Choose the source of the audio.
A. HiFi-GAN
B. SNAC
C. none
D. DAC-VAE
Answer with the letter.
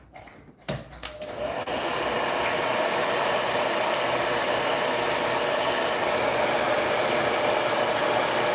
C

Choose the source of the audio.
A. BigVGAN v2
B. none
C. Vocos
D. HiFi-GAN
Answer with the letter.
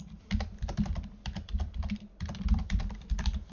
A